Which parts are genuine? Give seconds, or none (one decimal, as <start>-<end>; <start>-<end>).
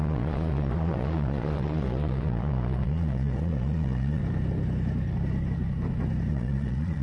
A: 4.2-6.3